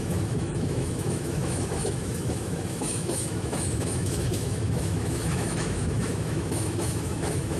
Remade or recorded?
remade